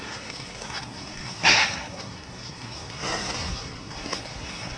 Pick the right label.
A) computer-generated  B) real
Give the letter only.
A